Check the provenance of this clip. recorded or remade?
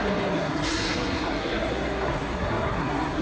remade